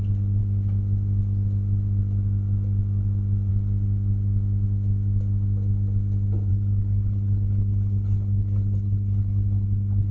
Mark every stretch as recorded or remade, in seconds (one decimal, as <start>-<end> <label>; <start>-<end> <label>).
0.0-6.5 recorded; 6.5-10.1 remade